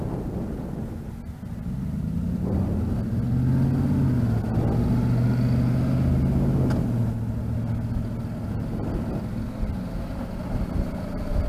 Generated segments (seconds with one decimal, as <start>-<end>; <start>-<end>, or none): none